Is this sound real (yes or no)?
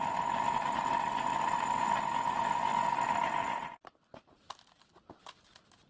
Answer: yes